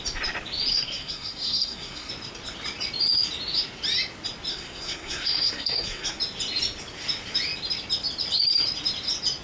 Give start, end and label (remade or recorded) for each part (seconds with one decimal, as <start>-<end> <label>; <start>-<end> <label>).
0.0-0.7 recorded; 0.7-2.1 remade; 2.1-4.5 recorded; 4.5-6.2 remade; 6.2-9.4 recorded